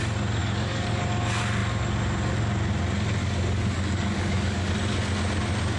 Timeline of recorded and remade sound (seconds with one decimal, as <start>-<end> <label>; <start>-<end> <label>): 0.0-0.4 recorded; 0.4-1.0 remade; 1.0-3.2 recorded; 3.2-4.7 remade; 4.7-5.8 recorded